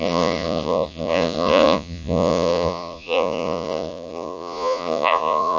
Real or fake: fake